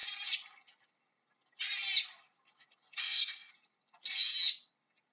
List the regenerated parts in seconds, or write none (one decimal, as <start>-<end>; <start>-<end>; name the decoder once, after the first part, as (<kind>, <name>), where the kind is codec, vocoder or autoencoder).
3.0-3.5 (codec, SNAC)